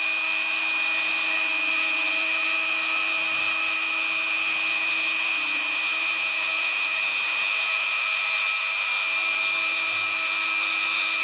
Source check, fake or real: fake